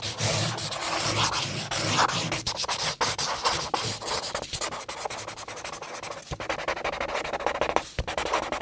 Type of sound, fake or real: real